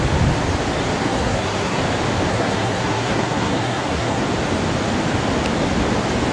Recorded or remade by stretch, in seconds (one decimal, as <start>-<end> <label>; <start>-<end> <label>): 0.0-1.0 recorded; 1.0-1.8 remade; 1.8-2.3 recorded; 2.3-4.2 remade; 4.2-6.3 recorded